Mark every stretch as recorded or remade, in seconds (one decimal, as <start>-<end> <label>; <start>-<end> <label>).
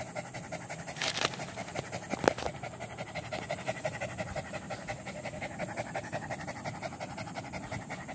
0.0-8.1 recorded